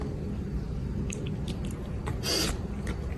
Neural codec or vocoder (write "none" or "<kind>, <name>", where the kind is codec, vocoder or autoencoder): vocoder, BigVGAN v2